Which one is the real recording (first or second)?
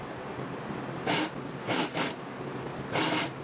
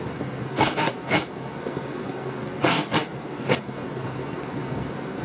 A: first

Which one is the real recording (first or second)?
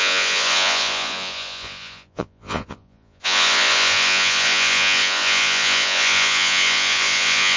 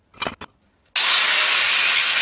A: second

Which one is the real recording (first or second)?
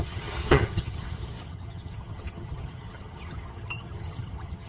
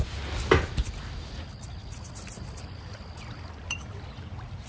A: second